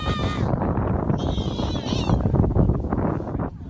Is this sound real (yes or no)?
yes